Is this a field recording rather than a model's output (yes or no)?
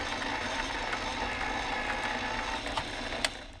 yes